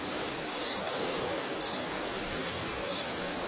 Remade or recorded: remade